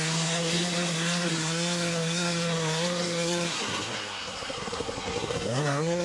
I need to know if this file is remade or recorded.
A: remade